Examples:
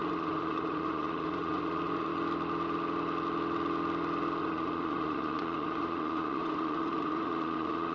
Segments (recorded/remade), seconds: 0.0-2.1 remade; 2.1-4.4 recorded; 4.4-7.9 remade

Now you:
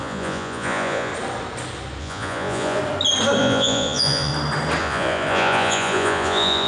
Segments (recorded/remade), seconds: 0.0-1.1 remade; 1.1-2.0 recorded; 2.0-2.8 remade; 2.8-3.4 recorded; 3.4-4.3 remade; 4.3-4.8 recorded; 4.8-6.7 remade

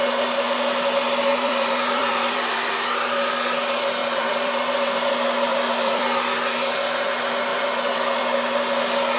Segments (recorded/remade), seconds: 0.0-1.3 recorded; 1.3-2.9 remade; 2.9-4.0 recorded; 4.0-5.1 remade; 5.1-5.5 recorded; 5.5-6.0 remade; 6.0-7.5 recorded; 7.5-8.2 remade; 8.2-9.2 recorded